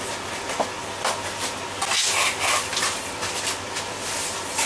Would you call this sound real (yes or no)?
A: yes